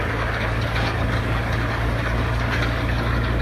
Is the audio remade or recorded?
remade